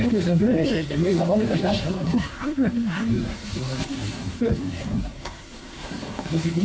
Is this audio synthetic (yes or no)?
yes